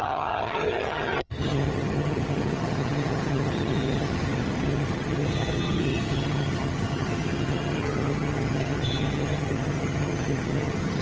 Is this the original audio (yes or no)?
no